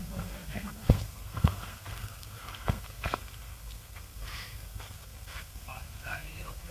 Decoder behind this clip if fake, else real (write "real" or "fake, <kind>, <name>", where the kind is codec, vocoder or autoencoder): fake, codec, SNAC